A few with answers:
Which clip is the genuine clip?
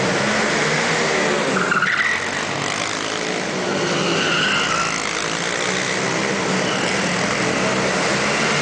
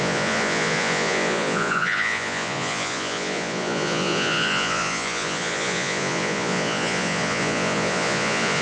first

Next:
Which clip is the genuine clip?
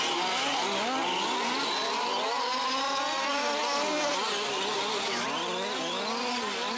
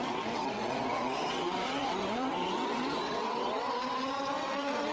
first